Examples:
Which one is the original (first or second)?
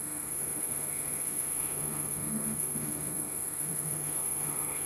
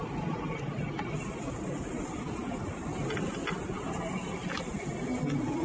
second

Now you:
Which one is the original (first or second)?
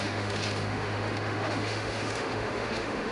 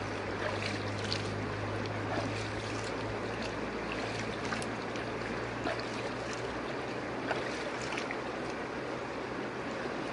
second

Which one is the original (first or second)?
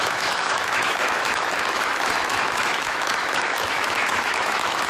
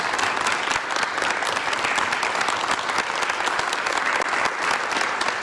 second